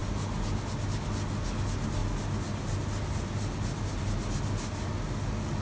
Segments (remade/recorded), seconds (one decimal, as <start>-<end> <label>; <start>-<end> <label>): 0.0-5.6 recorded